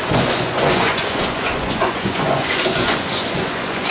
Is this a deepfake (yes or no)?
yes